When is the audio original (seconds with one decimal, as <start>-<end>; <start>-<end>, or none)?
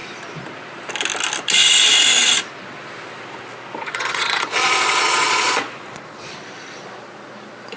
0.0-3.8; 6.4-7.8